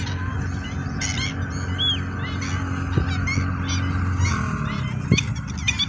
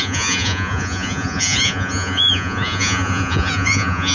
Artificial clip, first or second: second